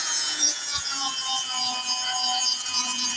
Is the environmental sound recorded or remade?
remade